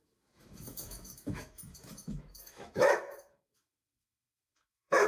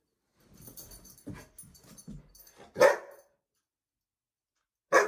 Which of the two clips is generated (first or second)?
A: first